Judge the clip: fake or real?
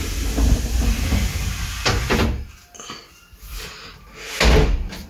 real